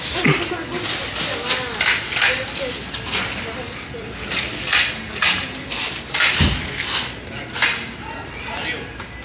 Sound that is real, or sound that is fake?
real